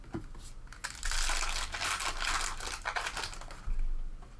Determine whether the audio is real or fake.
real